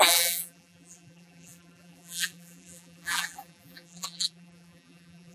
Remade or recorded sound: remade